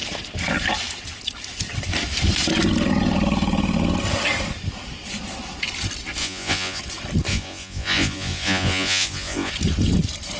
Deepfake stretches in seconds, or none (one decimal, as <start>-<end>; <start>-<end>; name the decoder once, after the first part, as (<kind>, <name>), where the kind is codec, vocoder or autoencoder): 6.2-6.8 (vocoder, Vocos); 7.3-9.5